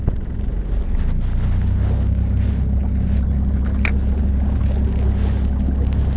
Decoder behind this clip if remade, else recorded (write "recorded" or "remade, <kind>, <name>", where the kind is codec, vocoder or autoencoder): recorded